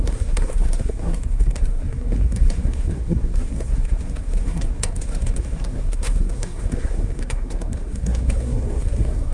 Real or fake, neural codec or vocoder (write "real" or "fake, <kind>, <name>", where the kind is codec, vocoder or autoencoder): fake, codec, SNAC